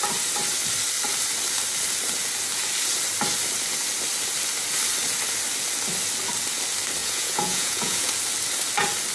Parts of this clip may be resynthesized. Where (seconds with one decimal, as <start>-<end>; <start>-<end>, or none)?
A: 7.0-8.1